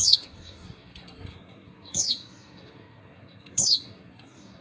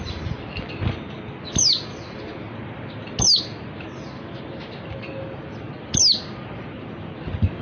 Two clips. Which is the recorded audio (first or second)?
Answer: second